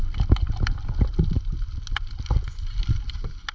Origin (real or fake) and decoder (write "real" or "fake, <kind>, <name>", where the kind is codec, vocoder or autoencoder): real